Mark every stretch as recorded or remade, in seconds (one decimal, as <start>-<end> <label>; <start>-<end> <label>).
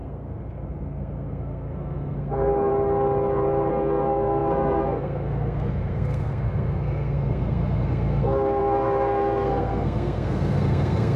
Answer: 0.0-2.7 remade; 2.7-3.7 recorded; 3.7-11.2 remade